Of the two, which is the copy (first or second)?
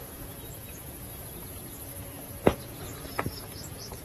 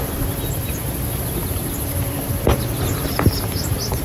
first